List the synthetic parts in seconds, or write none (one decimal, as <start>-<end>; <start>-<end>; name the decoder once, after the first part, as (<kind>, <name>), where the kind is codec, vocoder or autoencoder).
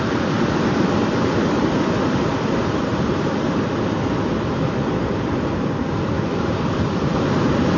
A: 0.0-7.8 (vocoder, BigVGAN v2)